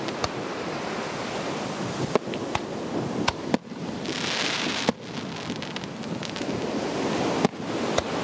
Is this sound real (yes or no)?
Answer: yes